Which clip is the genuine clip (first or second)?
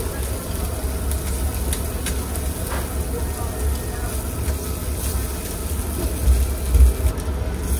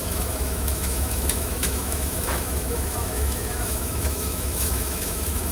first